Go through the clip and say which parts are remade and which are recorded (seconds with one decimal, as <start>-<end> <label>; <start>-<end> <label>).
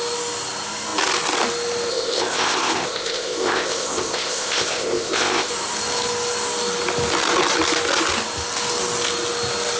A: 0.0-1.9 recorded; 1.9-5.5 remade; 5.5-9.8 recorded